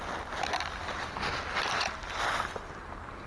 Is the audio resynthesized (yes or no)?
no